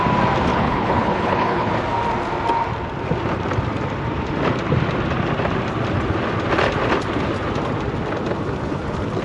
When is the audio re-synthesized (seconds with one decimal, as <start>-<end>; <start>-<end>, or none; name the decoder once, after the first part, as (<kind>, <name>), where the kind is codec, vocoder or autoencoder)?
0.5-1.7 (codec, HILCodec)